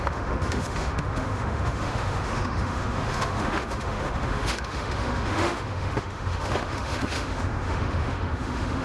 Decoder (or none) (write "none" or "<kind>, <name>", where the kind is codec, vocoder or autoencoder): autoencoder, DAC-VAE